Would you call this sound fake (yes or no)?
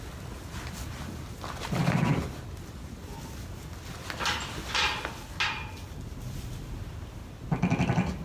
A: no